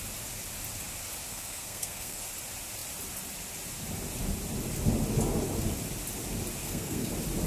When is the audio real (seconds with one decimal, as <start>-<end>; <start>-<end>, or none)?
0.0-1.3; 2.2-6.6; 7.1-7.5